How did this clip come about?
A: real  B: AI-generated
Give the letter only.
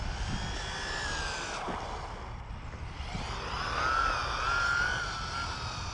A